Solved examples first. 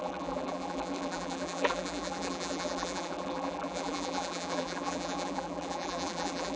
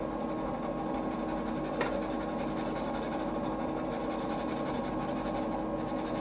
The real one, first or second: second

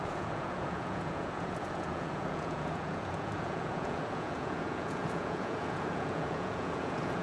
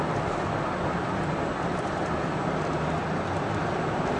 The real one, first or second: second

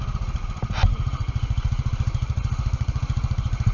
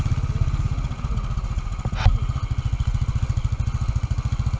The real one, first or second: second